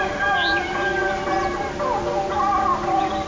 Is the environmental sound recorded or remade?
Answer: recorded